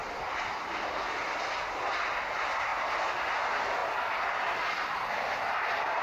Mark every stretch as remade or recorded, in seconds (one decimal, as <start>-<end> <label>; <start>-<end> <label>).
0.0-1.9 remade; 1.9-6.0 recorded